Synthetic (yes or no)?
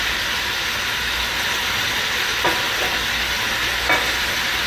no